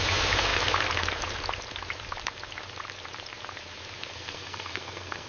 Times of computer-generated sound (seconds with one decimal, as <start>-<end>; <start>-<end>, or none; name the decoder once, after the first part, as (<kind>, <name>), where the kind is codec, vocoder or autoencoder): 4.1-5.3 (codec, SNAC)